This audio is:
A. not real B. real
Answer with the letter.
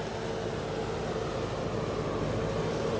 B